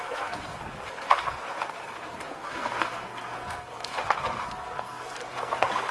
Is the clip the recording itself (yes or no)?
no